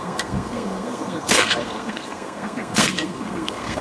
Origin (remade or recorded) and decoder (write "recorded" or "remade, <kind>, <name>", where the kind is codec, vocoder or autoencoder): remade, codec, SNAC